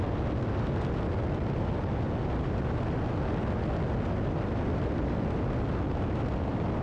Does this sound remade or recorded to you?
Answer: recorded